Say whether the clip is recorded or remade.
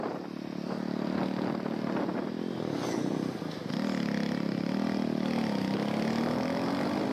recorded